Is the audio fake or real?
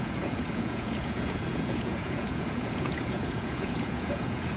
fake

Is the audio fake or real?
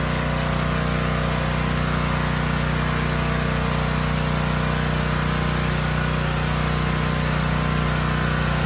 real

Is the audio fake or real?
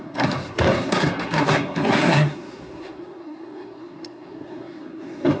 fake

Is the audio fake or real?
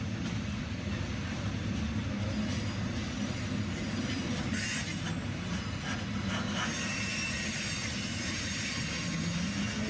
real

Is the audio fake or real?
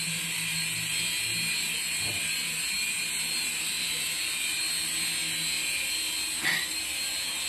real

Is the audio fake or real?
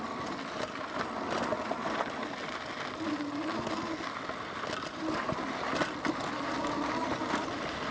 real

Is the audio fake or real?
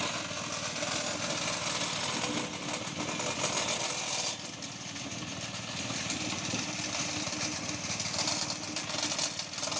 real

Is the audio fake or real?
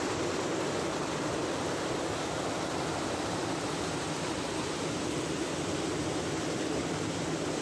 real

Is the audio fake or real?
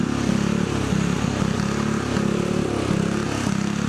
real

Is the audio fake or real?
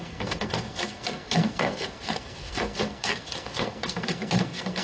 fake